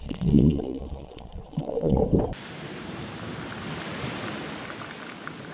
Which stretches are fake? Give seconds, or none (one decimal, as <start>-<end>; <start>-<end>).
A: 0.0-2.0